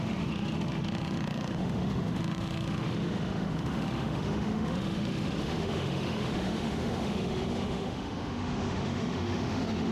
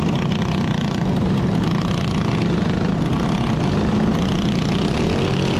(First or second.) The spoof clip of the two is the first